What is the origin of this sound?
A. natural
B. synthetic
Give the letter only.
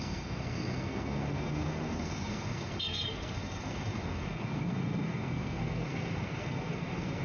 B